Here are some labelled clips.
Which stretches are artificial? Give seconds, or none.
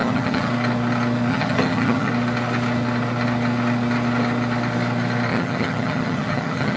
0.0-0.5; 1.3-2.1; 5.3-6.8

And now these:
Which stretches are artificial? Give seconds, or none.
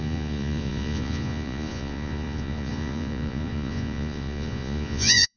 0.0-5.4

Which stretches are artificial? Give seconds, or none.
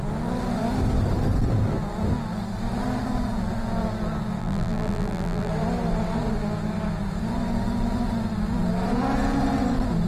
4.4-5.5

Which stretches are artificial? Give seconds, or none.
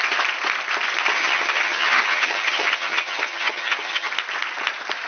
1.1-4.1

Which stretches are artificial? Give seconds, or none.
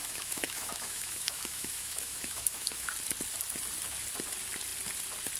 0.0-2.9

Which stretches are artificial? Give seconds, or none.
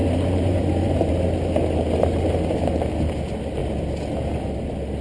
0.0-1.1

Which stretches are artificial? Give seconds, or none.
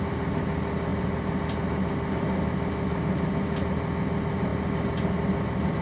none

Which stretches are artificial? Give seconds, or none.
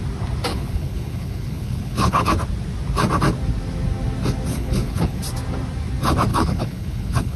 0.5-2.3; 4.5-5.2; 6.3-7.4